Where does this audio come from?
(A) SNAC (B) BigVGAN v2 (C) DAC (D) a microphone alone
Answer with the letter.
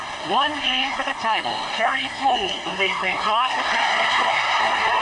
A